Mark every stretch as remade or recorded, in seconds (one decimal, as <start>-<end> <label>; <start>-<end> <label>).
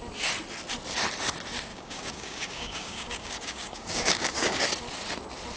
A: 0.0-1.7 recorded; 1.7-4.7 remade; 4.7-5.6 recorded